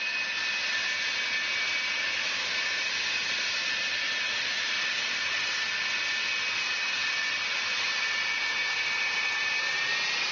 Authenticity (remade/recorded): recorded